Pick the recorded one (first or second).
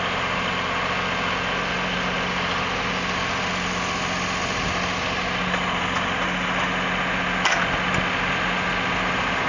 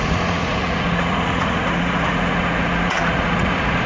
first